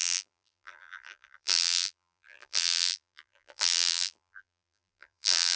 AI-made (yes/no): yes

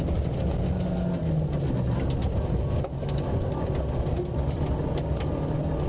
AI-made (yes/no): no